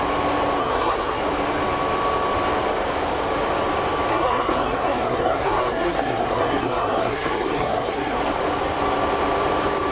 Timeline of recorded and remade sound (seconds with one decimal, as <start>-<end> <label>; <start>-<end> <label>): 0.0-0.6 recorded; 0.6-1.2 remade; 1.2-4.1 recorded; 4.1-8.2 remade; 8.2-9.9 recorded